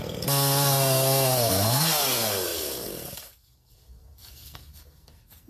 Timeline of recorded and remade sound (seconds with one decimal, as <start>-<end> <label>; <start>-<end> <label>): 0.0-5.5 remade